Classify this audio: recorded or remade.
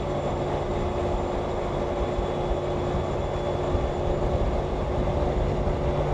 recorded